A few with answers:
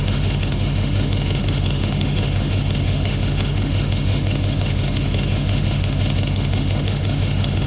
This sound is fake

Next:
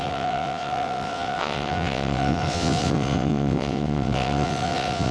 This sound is fake